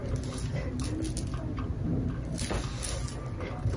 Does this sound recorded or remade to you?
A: recorded